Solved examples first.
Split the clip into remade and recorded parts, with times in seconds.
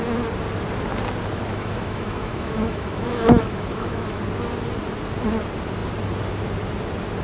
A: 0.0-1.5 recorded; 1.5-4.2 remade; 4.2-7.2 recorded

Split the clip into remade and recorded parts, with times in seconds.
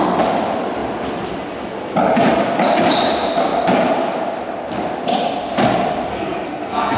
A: 0.0-6.1 recorded; 6.1-7.0 remade